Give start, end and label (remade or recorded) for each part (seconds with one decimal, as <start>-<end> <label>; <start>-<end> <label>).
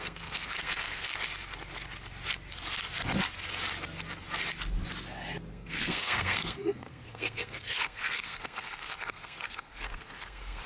0.0-1.1 remade; 1.1-5.5 recorded; 5.5-10.7 remade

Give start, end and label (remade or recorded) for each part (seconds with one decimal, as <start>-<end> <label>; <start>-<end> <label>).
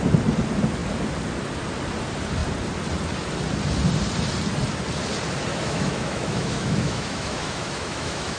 0.0-5.5 recorded; 5.5-8.4 remade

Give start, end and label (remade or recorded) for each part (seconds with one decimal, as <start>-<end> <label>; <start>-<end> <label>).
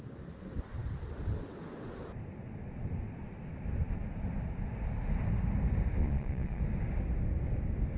0.0-6.0 recorded; 6.0-6.6 remade; 6.6-8.0 recorded